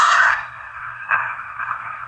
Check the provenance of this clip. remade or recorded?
remade